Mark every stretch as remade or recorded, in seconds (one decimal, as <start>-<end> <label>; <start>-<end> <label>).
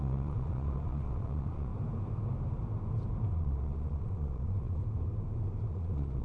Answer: 0.0-1.7 remade; 1.7-3.3 recorded; 3.3-4.8 remade; 4.8-5.7 recorded; 5.7-6.2 remade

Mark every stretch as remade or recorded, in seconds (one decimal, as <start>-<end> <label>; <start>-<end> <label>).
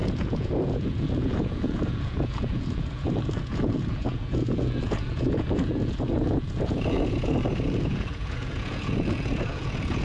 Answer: 0.0-10.0 remade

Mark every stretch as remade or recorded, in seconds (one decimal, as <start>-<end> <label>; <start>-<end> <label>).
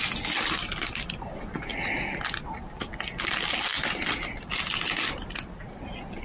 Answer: 0.0-1.7 recorded; 1.7-2.2 remade; 2.2-6.2 recorded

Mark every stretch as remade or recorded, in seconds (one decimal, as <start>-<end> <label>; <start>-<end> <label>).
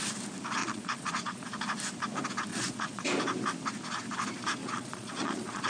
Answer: 0.0-0.6 recorded; 0.6-1.5 remade; 1.5-2.5 recorded; 2.5-3.0 remade; 3.0-4.6 recorded; 4.6-5.7 remade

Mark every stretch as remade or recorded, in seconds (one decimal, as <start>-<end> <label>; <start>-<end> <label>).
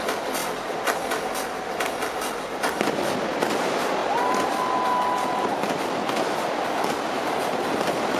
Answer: 0.0-8.2 recorded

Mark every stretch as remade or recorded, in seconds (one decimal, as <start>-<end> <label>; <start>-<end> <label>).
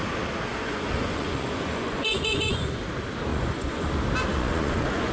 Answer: 0.0-0.5 recorded; 0.5-2.8 remade; 2.8-3.3 recorded; 3.3-3.9 remade; 3.9-4.3 recorded; 4.3-5.1 remade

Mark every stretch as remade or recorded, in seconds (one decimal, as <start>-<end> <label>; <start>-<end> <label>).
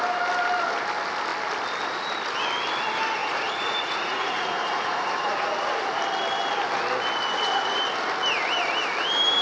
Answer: 0.0-3.2 recorded; 3.2-6.0 remade; 6.0-7.3 recorded; 7.3-7.8 remade; 7.8-9.4 recorded